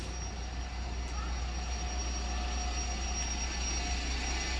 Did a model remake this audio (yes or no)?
no